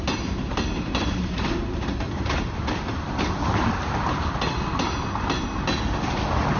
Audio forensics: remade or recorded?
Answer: recorded